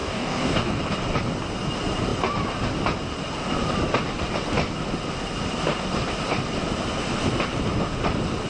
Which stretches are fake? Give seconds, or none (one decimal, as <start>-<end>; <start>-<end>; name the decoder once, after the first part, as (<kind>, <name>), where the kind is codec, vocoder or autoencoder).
0.0-0.8 (codec, DAC)